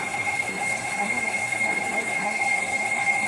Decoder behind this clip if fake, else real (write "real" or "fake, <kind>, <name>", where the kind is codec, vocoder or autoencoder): fake, codec, SNAC